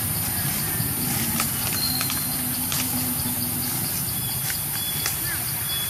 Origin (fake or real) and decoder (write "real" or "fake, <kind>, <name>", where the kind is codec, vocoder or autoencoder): real